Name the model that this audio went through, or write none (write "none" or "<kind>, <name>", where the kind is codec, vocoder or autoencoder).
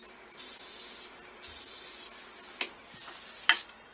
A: none